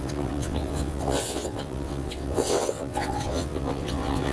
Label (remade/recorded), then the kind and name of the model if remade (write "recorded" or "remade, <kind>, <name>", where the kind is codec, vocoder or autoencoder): remade, vocoder, WaveNeXt